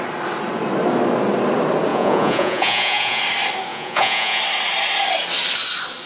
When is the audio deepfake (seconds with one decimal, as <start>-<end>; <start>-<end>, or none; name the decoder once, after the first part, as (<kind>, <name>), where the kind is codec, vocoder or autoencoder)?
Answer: 1.9-3.2 (vocoder, Vocos); 3.7-4.4